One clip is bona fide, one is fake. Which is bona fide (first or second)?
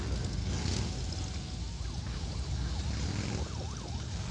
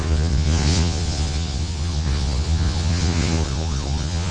first